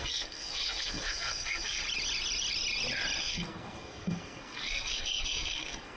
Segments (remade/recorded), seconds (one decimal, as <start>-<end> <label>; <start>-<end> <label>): 0.0-1.8 remade; 1.8-3.2 recorded; 3.2-6.0 remade